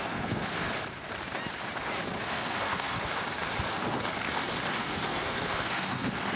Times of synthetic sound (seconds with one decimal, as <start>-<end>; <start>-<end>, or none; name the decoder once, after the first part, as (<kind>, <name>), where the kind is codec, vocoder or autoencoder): 0.0-0.4 (codec, SNAC); 2.2-3.1; 4.8-6.4